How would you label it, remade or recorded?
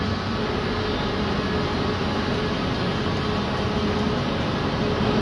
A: recorded